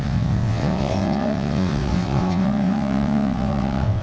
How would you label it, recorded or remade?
remade